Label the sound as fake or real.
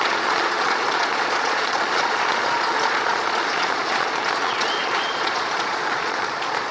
fake